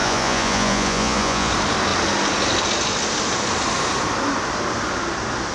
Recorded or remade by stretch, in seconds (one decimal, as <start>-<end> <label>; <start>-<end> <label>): 0.0-1.5 remade; 1.5-5.5 recorded